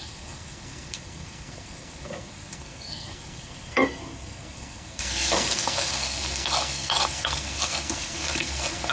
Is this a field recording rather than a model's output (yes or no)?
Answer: no